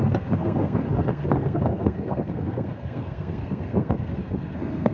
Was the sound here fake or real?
fake